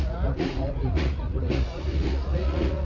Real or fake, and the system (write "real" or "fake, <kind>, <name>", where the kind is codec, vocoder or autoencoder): fake, vocoder, Vocos